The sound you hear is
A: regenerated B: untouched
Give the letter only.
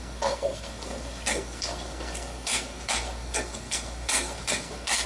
A